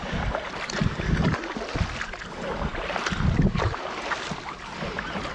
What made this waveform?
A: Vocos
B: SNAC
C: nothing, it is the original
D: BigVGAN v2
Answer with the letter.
C